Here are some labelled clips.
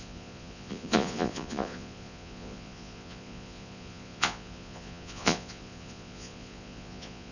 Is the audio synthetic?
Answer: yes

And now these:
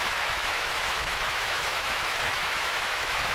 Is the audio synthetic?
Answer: yes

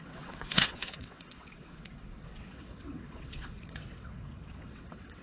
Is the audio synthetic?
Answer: yes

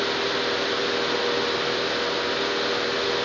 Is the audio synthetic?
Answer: no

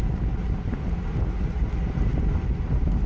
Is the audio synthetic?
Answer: no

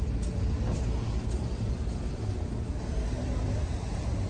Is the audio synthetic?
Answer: no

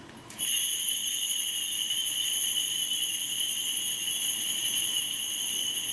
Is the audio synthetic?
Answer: yes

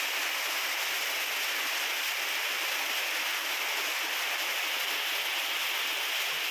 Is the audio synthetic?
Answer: no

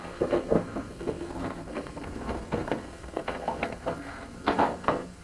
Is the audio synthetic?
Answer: yes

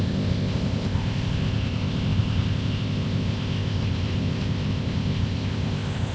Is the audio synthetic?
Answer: yes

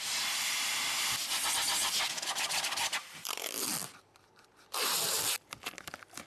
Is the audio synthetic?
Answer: yes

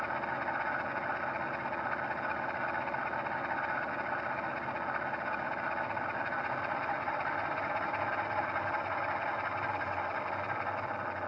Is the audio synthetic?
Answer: no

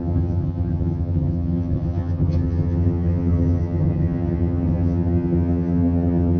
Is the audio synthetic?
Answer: yes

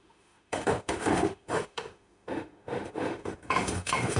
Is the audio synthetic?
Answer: yes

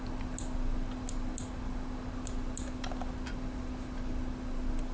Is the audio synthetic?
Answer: no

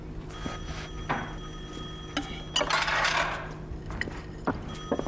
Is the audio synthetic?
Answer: no